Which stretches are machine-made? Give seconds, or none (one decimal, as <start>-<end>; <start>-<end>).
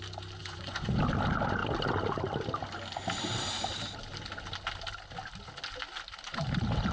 0.4-1.0